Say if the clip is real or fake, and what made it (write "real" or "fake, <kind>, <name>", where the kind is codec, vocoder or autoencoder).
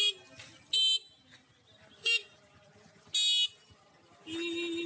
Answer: real